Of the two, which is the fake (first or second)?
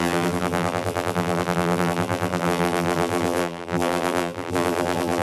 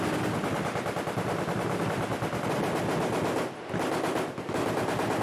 first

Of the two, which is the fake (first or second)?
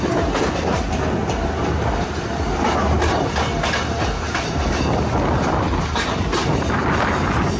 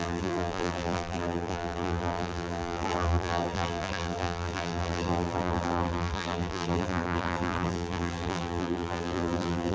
second